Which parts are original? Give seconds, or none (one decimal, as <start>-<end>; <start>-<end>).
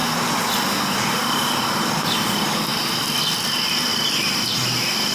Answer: 0.0-5.1